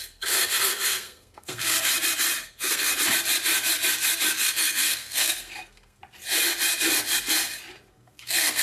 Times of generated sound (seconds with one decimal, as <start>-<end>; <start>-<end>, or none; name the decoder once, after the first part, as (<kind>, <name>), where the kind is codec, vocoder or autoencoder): 0.0-1.9 (codec, SNAC); 2.4-2.9; 4.3-6.0; 7.9-8.6

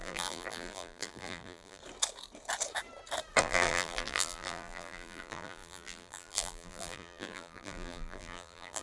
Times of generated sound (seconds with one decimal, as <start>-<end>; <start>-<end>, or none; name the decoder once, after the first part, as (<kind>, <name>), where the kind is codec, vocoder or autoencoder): 0.0-1.8 (vocoder, BigVGAN v2); 3.4-8.8

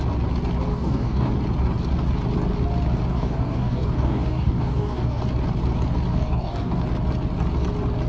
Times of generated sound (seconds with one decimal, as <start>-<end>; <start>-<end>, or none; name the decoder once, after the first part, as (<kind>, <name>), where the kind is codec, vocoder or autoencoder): 0.7-1.3 (codec, DAC); 3.1-5.2; 6.1-6.8

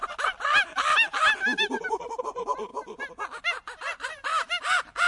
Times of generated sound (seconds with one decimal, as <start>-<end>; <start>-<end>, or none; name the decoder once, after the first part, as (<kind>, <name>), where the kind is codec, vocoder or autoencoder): 2.2-2.7 (vocoder, Vocos); 3.8-4.3

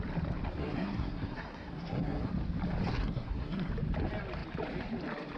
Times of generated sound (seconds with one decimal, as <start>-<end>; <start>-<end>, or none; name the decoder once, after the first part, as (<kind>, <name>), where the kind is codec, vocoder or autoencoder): 0.6-2.3 (codec, SNAC); 2.9-3.7

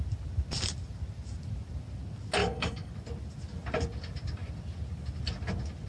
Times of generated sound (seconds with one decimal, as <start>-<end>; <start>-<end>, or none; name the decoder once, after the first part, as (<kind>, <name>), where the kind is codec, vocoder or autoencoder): 2.4-2.9 (codec, DAC)

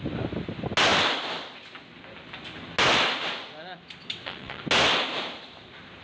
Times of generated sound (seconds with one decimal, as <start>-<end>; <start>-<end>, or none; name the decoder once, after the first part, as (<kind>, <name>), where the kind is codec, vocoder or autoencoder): 4.0-4.6 (vocoder, WaveNeXt)